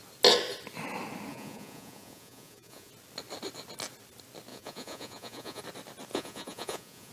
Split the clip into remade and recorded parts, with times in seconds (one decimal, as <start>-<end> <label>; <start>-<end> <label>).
0.0-1.3 recorded; 1.3-2.9 remade; 2.9-4.5 recorded; 4.5-5.6 remade; 5.6-6.1 recorded; 6.1-7.1 remade